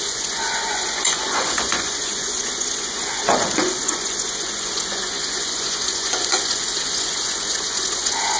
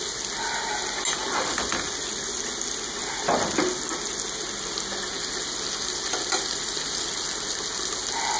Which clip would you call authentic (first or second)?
second